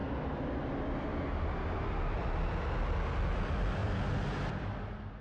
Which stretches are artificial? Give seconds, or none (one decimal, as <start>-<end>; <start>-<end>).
none